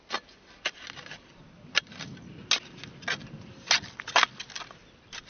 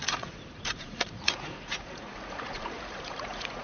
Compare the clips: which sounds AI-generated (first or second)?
second